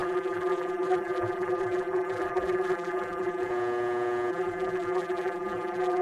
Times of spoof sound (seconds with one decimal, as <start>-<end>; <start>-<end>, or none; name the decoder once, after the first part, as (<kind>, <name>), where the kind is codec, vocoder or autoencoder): 0.0-3.5 (vocoder, BigVGAN v2); 4.3-6.0